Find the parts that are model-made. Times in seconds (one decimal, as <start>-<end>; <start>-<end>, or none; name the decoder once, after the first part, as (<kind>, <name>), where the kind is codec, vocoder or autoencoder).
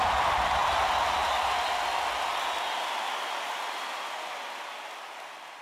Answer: none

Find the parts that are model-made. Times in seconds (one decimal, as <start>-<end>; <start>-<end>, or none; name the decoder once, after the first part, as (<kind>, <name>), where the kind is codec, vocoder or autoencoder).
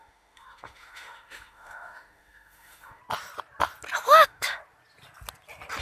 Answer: 0.0-3.0 (autoencoder, DAC-VAE); 4.0-4.6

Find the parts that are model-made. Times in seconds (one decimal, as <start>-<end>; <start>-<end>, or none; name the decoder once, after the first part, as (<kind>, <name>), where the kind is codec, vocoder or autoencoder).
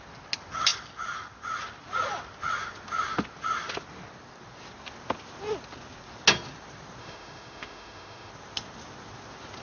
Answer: 7.0-8.3 (autoencoder, DAC-VAE)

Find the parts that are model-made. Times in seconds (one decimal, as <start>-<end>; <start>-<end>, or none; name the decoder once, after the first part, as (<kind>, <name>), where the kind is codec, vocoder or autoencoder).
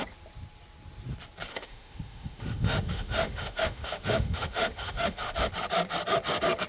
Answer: 1.5-5.5 (autoencoder, DAC-VAE)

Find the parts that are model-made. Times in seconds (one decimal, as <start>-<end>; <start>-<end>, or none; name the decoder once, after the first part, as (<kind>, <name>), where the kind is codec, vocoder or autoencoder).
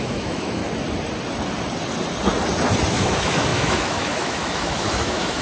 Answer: 0.0-0.6 (autoencoder, DAC-VAE); 2.9-5.4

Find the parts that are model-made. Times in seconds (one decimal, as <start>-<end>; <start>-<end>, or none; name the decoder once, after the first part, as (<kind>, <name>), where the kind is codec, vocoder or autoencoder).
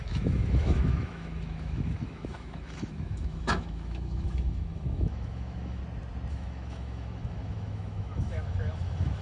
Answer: 0.0-5.8 (autoencoder, DAC-VAE); 6.3-9.2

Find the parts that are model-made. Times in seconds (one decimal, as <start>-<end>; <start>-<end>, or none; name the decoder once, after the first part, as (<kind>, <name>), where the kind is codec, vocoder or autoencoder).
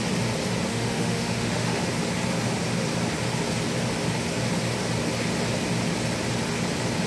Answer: 0.7-1.9 (autoencoder, DAC-VAE)